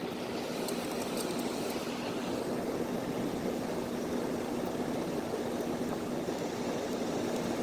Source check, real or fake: real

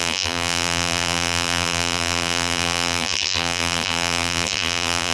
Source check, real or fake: fake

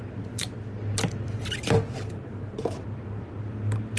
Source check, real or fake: fake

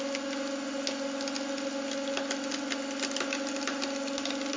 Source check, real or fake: real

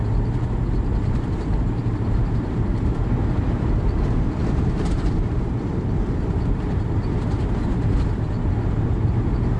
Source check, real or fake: fake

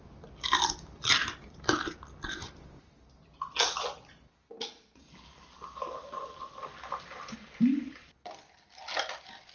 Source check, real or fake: real